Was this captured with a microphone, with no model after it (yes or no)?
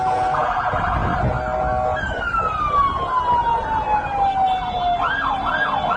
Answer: yes